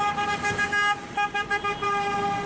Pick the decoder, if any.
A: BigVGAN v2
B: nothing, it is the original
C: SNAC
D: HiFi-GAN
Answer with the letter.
B